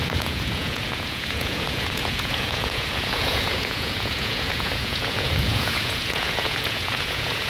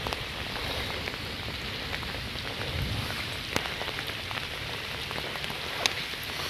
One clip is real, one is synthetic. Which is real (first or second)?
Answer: second